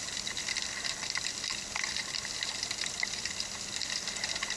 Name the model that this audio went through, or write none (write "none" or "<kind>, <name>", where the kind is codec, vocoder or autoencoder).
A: none